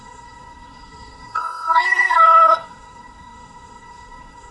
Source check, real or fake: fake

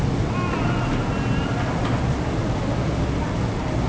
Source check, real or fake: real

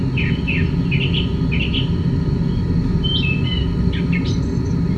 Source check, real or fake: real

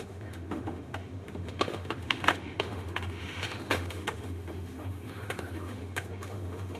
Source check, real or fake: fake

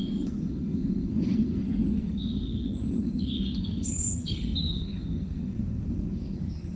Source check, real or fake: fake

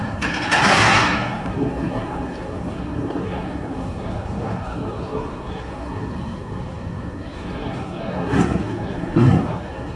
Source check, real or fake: fake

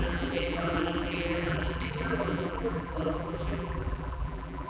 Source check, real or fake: fake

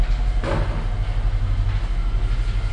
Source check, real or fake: real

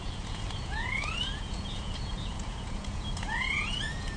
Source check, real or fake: fake